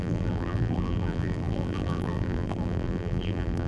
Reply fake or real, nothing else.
fake